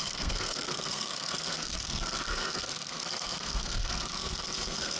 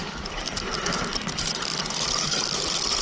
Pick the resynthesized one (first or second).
first